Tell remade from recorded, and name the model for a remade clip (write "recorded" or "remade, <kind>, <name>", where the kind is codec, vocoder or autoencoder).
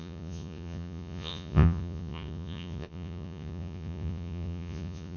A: remade, vocoder, Vocos